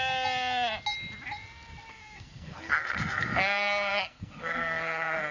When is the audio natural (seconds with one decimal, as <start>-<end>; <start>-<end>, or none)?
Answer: 0.0-1.9